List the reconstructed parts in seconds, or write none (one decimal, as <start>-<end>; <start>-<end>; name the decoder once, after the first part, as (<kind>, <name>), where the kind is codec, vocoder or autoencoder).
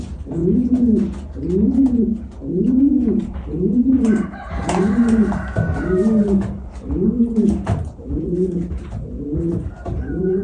0.0-0.4 (vocoder, BigVGAN v2); 2.8-10.4